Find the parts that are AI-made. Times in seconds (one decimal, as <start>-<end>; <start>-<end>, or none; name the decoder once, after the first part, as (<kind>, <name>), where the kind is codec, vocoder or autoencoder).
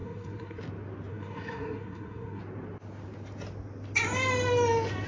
0.0-0.6 (codec, SNAC); 1.1-2.4